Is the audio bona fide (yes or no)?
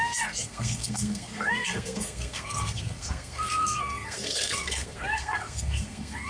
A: no